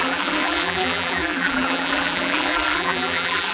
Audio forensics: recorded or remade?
remade